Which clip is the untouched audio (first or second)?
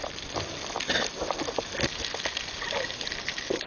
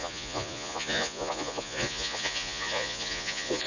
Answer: first